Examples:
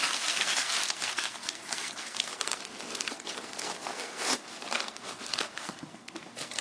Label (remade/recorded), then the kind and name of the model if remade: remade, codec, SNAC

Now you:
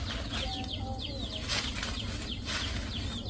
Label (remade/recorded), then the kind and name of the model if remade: recorded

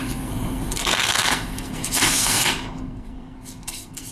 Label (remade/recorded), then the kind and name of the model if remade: remade, codec, SNAC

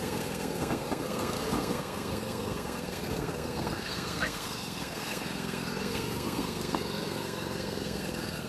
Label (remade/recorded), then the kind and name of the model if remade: remade, codec, SNAC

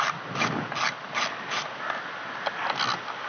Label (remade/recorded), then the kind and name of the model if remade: recorded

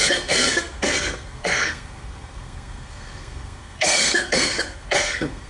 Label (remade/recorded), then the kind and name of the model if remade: remade, codec, SNAC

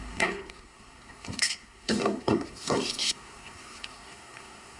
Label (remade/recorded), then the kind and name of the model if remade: remade, codec, SNAC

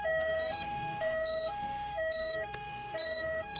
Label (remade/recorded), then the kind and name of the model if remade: remade, codec, SNAC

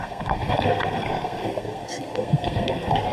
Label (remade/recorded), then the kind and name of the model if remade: remade, codec, SNAC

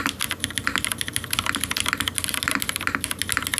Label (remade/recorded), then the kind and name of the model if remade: recorded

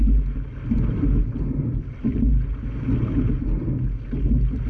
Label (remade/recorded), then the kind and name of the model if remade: recorded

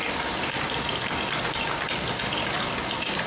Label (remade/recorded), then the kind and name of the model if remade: recorded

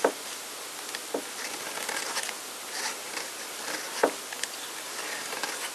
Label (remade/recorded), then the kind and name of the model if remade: recorded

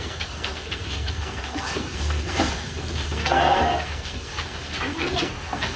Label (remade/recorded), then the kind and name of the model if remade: remade, codec, SNAC